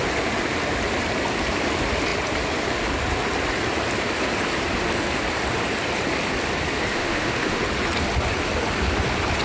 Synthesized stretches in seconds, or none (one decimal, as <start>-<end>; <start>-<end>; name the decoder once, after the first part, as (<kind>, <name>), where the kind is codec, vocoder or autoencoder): 6.9-7.6 (autoencoder, DAC-VAE)